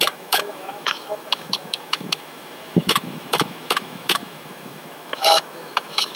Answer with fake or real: fake